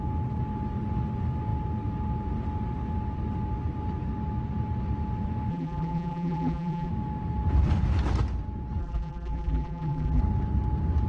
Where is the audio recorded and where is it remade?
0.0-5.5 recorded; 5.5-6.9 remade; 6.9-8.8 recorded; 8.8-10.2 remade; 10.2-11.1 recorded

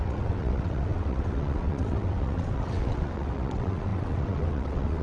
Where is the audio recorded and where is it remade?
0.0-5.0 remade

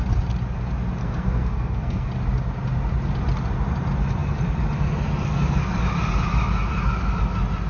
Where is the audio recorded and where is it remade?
0.0-1.0 recorded; 1.0-2.1 remade; 2.1-7.7 recorded

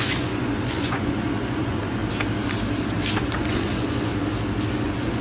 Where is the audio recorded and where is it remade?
0.0-2.0 remade; 2.0-3.2 recorded; 3.2-4.1 remade; 4.1-4.7 recorded; 4.7-5.2 remade

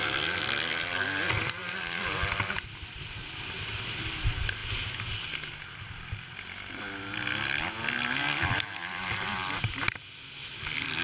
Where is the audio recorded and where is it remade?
0.0-11.0 recorded